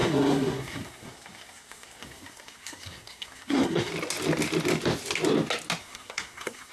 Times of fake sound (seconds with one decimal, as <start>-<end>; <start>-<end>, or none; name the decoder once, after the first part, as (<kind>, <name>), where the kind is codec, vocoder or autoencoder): 0.0-3.9 (codec, SNAC); 5.8-6.7